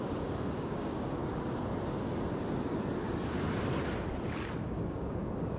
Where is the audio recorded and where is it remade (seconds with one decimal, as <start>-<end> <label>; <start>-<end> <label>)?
0.0-1.2 remade; 1.2-4.6 recorded; 4.6-5.6 remade